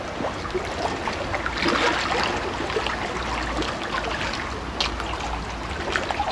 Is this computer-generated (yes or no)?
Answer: no